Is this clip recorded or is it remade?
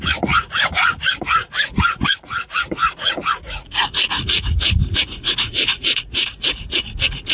remade